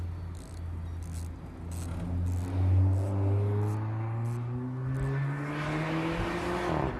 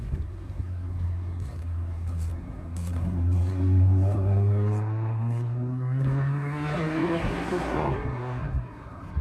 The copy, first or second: second